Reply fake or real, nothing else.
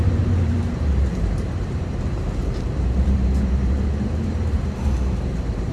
fake